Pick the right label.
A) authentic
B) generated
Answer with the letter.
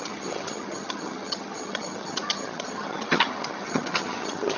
B